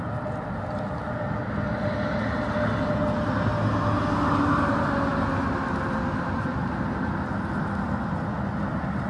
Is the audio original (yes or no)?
yes